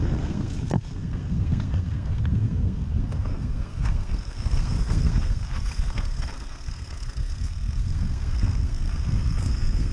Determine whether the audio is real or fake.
fake